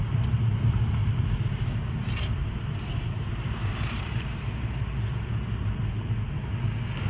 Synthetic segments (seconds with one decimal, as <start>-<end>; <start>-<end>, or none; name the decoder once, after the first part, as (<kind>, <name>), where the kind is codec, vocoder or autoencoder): 1.0-5.3 (vocoder, BigVGAN v2)